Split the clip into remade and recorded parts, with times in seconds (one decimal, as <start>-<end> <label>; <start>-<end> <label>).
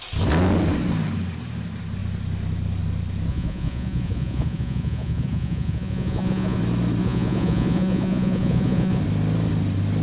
0.0-3.3 recorded; 3.3-6.6 remade; 6.6-7.0 recorded; 7.0-9.0 remade; 9.0-10.0 recorded